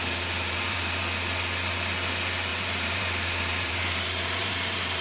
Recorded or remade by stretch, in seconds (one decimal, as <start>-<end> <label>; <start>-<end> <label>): 0.0-1.0 remade; 1.0-2.5 recorded; 2.5-5.0 remade